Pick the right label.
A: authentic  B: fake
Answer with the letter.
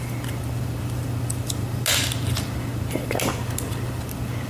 A